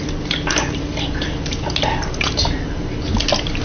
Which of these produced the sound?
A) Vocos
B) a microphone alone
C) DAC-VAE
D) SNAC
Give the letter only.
B